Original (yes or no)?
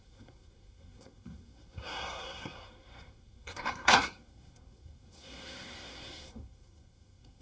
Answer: no